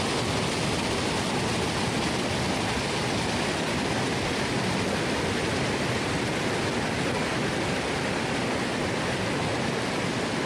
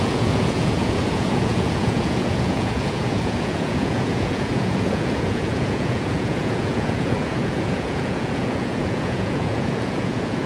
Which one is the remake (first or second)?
second